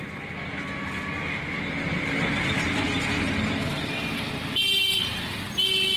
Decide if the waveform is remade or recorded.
recorded